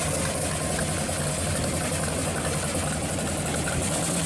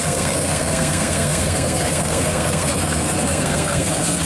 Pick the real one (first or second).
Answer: first